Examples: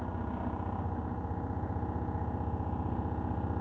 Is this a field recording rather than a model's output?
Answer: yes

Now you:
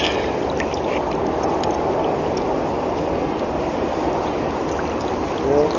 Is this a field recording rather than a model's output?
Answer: yes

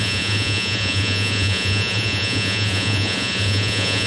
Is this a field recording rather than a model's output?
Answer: no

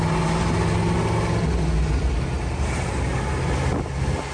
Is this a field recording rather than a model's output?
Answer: yes